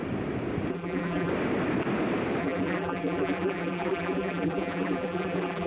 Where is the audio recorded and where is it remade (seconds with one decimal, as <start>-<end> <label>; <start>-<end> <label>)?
0.0-0.7 recorded; 0.7-1.3 remade; 1.3-2.4 recorded; 2.4-5.7 remade